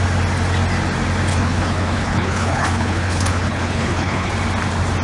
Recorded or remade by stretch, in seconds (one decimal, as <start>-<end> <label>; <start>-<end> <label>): 0.0-1.3 recorded; 1.3-4.3 remade; 4.3-5.0 recorded